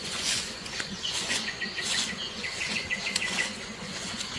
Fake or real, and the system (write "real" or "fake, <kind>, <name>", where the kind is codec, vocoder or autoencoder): fake, vocoder, Vocos